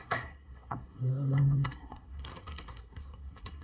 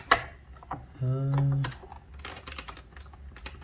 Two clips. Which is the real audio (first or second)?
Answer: second